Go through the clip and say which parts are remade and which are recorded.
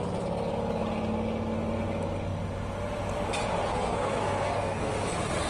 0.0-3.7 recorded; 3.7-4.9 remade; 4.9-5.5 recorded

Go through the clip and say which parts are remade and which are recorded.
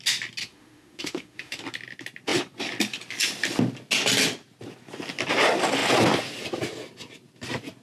0.0-0.4 recorded; 0.4-1.6 remade; 1.6-7.8 recorded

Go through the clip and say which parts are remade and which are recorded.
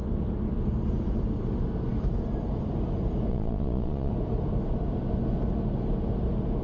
0.0-3.3 recorded; 3.3-4.1 remade; 4.1-6.6 recorded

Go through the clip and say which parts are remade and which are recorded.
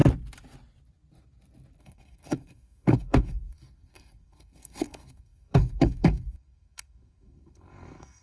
0.0-1.8 recorded; 1.8-8.2 remade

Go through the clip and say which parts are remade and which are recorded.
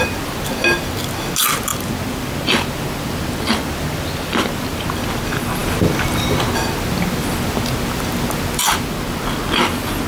0.0-10.1 recorded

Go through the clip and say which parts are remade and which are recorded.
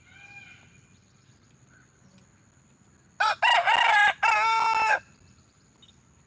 0.0-6.3 recorded